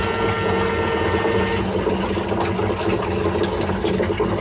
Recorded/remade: recorded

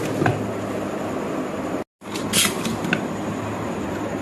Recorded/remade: recorded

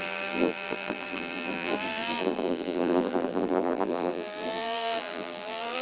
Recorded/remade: remade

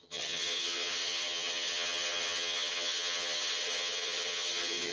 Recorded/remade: remade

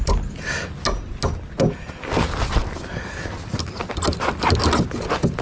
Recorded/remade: recorded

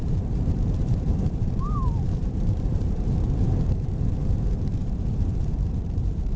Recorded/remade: remade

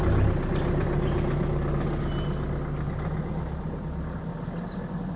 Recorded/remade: recorded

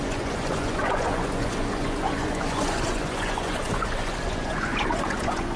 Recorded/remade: remade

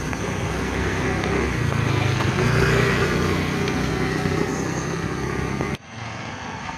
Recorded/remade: remade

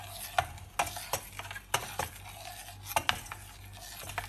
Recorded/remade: recorded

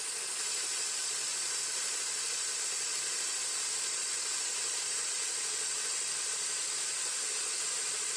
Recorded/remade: recorded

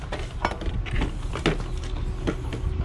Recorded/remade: recorded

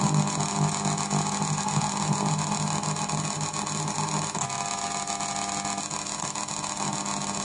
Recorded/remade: recorded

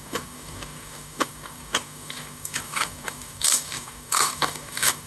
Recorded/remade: remade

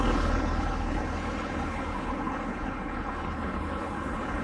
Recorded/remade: remade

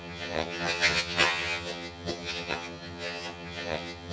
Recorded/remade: remade